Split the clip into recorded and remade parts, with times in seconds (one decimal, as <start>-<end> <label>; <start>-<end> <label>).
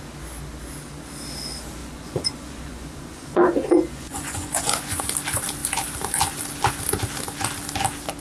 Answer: 0.0-1.8 recorded; 1.8-5.0 remade; 5.0-8.2 recorded